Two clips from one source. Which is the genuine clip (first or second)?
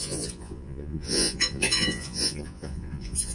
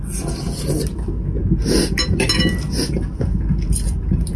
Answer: second